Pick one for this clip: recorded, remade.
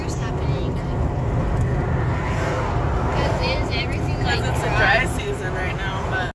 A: recorded